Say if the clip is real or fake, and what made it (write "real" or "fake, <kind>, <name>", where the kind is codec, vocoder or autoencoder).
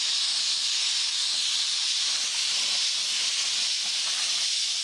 real